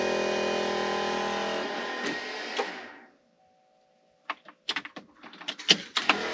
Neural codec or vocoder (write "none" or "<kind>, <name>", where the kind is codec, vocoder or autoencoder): none